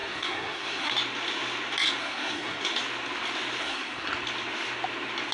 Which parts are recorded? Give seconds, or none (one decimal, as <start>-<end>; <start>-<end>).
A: 0.9-2.0; 2.6-3.6; 4.1-5.3